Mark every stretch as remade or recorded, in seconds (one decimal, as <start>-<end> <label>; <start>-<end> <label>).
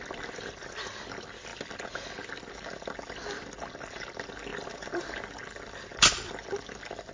0.0-7.1 recorded